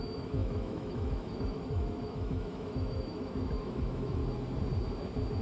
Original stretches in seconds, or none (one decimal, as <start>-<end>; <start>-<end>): 4.2-5.4